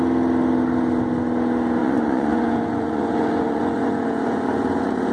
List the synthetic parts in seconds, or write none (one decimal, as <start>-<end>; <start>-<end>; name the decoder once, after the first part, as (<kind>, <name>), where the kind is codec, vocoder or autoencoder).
1.8-5.1 (vocoder, Vocos)